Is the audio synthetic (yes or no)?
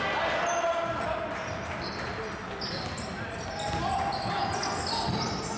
no